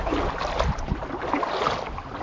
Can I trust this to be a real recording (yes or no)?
yes